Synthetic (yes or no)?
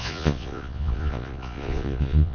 yes